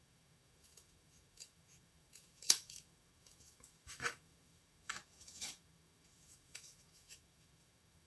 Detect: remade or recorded remade